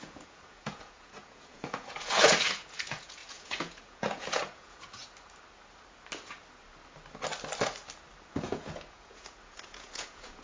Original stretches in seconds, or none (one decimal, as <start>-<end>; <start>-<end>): 5.0-8.3